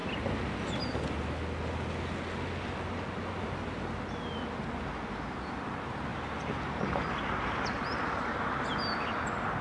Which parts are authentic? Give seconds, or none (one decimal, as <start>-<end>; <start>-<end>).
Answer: 0.0-9.6